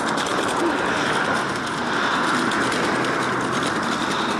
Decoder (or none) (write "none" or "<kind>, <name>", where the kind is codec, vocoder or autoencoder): none